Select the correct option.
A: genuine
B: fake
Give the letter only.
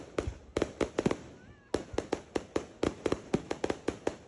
A